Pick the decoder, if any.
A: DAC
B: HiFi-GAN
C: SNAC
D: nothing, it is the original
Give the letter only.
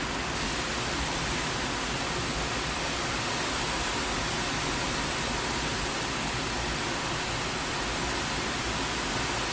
D